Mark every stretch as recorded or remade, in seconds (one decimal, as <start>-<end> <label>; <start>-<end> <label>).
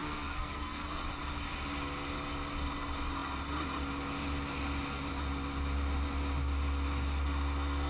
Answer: 0.0-1.0 remade; 1.0-7.9 recorded